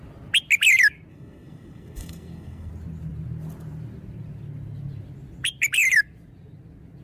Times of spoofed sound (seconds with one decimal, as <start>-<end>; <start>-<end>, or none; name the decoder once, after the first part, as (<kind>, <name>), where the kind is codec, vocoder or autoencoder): 1.1-2.7 (codec, SNAC)

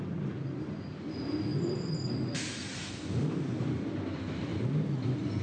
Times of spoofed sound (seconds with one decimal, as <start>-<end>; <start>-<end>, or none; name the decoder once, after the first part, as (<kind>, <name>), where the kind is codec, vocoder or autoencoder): none